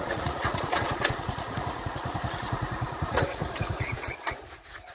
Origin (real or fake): fake